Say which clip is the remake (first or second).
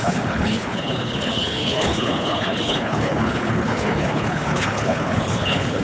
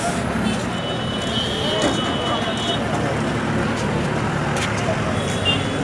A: first